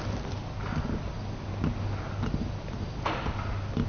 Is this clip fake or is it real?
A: real